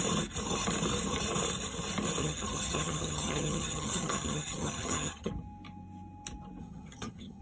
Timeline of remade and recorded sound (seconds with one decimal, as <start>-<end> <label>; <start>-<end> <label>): 0.0-2.2 recorded; 2.2-5.3 remade; 5.3-6.6 recorded; 6.6-7.4 remade